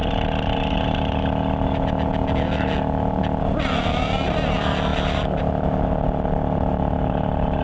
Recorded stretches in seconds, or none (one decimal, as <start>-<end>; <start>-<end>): 0.0-3.5; 4.9-6.9